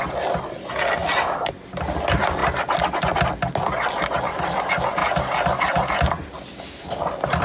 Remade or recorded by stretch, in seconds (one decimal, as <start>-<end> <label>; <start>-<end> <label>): 0.0-7.4 recorded